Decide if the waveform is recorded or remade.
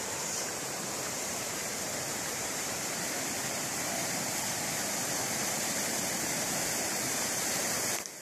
remade